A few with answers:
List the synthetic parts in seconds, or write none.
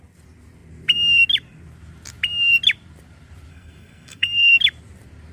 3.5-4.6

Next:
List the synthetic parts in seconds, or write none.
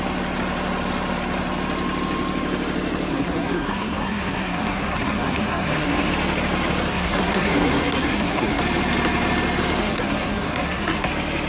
3.1-6.1; 6.9-8.6; 9.8-11.1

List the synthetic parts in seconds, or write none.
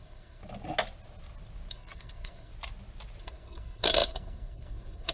0.0-0.4; 1.7-2.5; 3.2-5.1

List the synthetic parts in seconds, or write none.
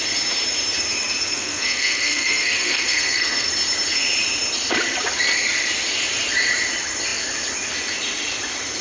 1.2-3.5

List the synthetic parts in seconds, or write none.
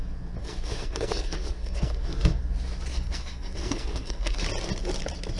0.4-2.4; 2.9-4.4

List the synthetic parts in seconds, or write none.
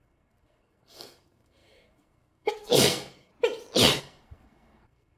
0.0-3.3; 4.0-5.2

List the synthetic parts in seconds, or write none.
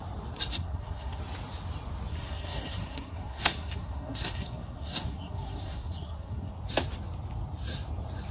0.5-1.2; 2.1-6.5